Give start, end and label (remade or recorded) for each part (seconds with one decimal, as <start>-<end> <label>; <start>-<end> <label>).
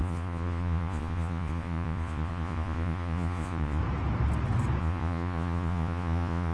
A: 0.0-3.8 remade; 3.8-4.8 recorded; 4.8-6.5 remade